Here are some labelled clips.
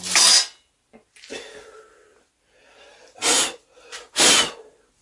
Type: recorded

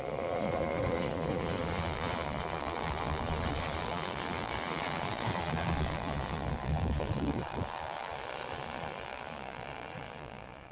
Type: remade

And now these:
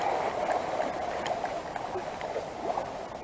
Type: recorded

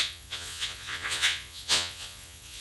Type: remade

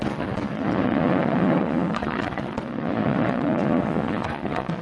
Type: remade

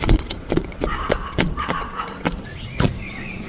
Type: remade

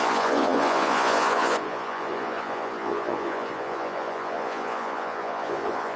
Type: remade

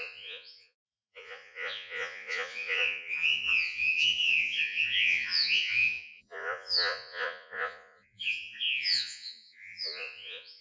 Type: remade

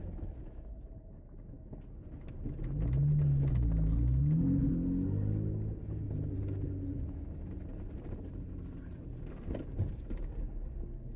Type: recorded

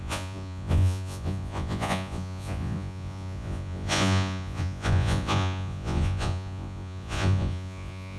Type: remade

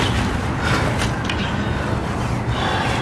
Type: recorded